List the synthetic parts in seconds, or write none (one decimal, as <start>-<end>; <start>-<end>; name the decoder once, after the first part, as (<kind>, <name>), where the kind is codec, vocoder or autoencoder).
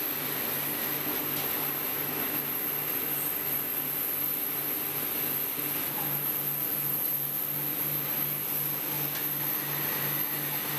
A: none